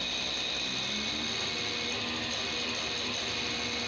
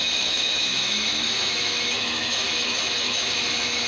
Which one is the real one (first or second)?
first